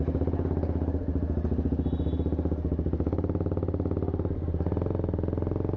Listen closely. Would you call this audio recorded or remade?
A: recorded